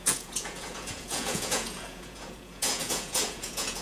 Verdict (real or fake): fake